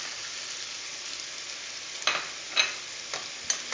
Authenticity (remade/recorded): recorded